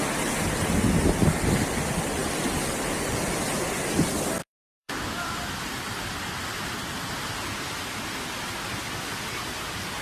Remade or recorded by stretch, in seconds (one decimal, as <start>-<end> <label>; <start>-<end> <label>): 0.0-4.4 recorded; 4.4-4.9 remade; 4.9-10.0 recorded